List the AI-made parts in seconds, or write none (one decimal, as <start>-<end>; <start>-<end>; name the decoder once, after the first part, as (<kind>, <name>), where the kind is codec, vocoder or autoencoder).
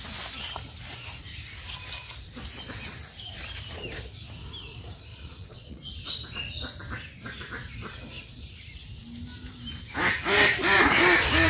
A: 5.1-5.9 (vocoder, Vocos)